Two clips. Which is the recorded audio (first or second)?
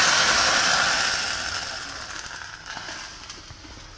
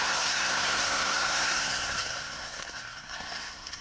first